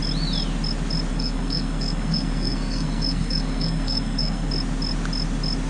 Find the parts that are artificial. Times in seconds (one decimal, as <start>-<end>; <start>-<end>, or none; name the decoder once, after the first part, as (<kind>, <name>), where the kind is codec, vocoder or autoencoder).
1.1-4.5 (codec, SNAC)